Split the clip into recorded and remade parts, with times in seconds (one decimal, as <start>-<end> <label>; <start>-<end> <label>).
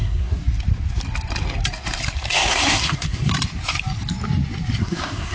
0.0-0.4 remade; 0.4-2.3 recorded; 2.3-3.3 remade; 3.3-4.8 recorded; 4.8-5.3 remade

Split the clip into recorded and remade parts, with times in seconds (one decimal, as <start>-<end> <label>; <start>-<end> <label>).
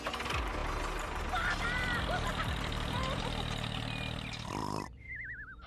0.0-2.3 recorded; 2.3-3.2 remade; 3.2-4.6 recorded; 4.6-5.1 remade; 5.1-5.7 recorded